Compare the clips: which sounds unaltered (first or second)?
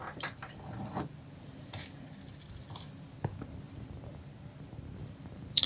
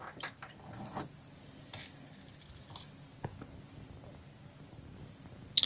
second